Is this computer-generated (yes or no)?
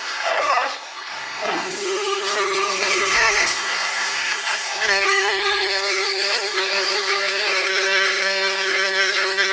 yes